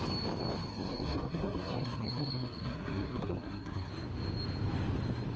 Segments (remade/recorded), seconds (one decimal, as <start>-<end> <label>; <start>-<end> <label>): 0.0-0.7 recorded; 0.7-3.9 remade; 3.9-5.4 recorded